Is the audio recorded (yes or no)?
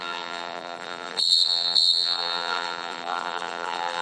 no